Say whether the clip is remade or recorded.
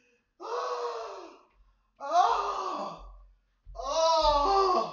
recorded